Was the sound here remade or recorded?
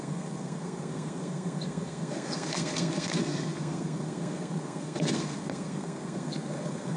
remade